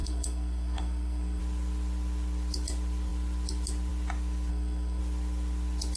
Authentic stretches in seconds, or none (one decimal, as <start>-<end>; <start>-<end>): 1.4-4.5; 5.0-6.0